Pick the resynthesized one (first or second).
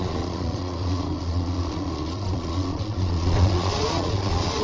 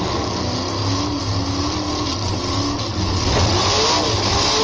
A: first